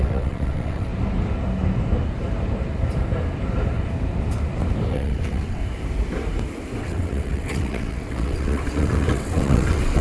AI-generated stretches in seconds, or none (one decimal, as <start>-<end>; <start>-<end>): 0.0-0.9; 4.9-5.6; 6.8-10.0

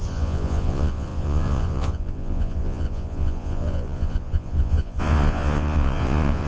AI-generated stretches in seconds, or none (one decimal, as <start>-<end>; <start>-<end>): 0.0-6.5

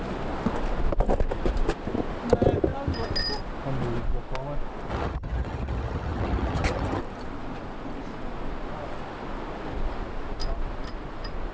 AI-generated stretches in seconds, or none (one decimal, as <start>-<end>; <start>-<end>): 4.9-7.0